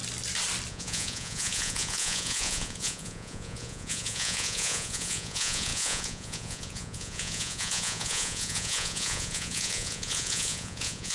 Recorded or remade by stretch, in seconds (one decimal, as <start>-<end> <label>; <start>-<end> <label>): 0.0-0.7 recorded; 0.7-11.1 remade